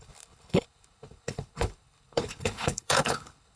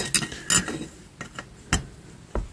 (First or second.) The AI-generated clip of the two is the first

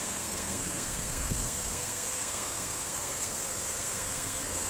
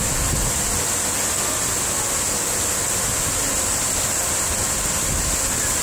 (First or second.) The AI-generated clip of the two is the first